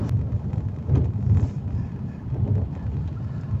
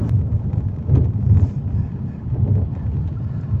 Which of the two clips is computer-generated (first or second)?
first